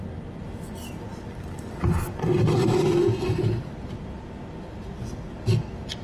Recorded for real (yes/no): yes